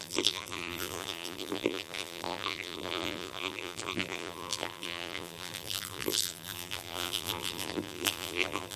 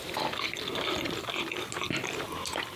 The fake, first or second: first